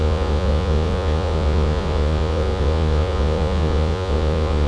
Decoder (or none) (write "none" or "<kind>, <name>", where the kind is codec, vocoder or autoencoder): vocoder, Vocos